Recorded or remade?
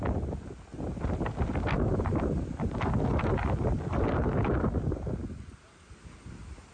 recorded